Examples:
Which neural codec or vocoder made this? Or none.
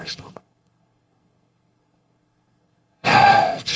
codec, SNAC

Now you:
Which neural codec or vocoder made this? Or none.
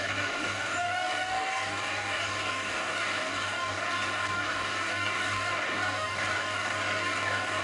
codec, DAC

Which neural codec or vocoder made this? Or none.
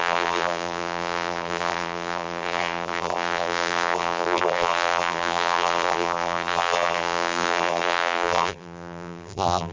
vocoder, BigVGAN v2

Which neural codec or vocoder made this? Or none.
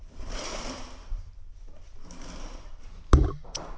none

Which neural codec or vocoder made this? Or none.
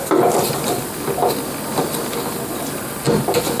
none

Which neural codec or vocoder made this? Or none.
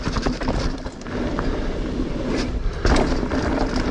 none